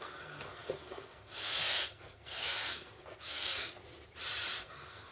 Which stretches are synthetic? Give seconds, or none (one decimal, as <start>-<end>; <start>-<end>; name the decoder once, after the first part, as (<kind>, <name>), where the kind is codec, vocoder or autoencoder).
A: 0.0-3.8 (codec, SNAC); 4.6-5.1